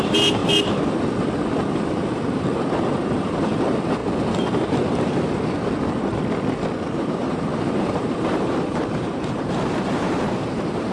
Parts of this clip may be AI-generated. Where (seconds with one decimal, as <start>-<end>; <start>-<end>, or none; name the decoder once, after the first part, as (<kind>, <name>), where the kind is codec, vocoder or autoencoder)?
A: 0.0-0.4 (vocoder, BigVGAN v2); 1.5-4.0; 7.0-10.9